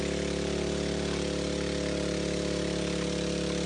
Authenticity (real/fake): real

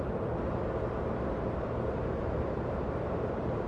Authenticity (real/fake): fake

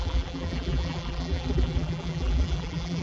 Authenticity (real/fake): fake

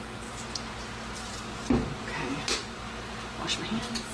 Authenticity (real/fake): real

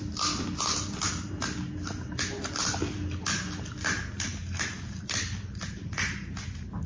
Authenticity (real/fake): real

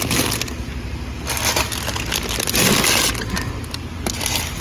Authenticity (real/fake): real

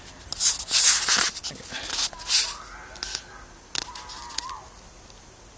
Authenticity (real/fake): real